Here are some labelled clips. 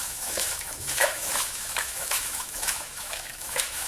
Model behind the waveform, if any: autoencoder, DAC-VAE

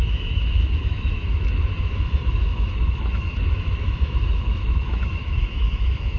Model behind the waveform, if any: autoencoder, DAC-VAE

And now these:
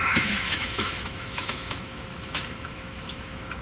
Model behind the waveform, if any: autoencoder, DAC-VAE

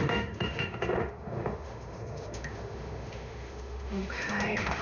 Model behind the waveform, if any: autoencoder, DAC-VAE